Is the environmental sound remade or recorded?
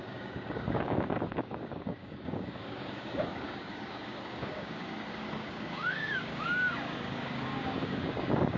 remade